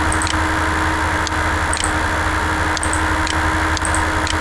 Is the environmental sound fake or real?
real